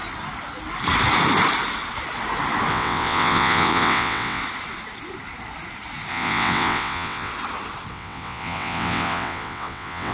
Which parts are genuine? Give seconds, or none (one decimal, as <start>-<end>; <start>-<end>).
0.0-2.7; 4.4-6.1; 7.3-7.9